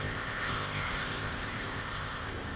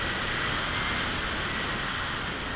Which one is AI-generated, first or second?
first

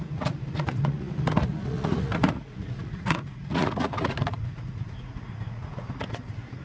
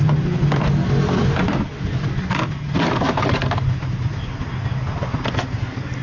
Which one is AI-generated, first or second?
first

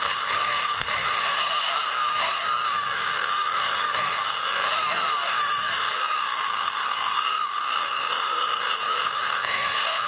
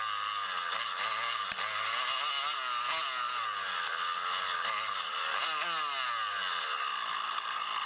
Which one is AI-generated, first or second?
first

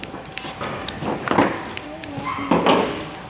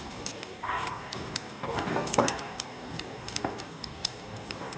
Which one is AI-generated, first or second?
second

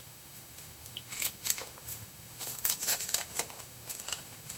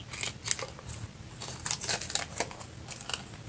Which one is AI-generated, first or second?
first